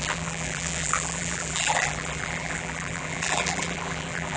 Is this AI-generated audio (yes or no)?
yes